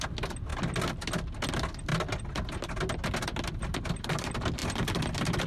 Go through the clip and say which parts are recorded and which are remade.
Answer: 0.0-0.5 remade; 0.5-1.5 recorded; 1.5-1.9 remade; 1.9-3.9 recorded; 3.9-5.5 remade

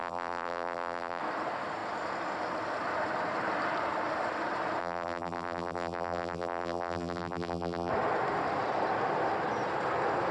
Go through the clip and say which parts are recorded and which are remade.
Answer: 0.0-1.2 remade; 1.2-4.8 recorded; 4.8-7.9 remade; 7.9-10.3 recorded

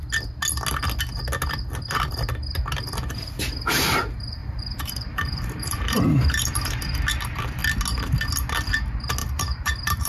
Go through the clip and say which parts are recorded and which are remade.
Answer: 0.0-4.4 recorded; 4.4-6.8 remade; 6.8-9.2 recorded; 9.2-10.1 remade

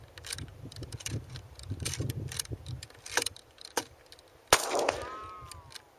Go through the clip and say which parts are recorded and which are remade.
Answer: 0.0-0.5 recorded; 0.5-4.1 remade; 4.1-6.0 recorded